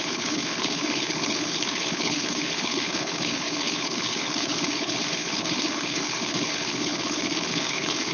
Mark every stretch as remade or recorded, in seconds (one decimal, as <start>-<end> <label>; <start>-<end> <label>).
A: 0.0-8.1 remade